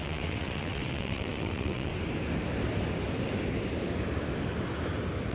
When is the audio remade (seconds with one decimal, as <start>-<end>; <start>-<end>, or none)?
0.0-1.9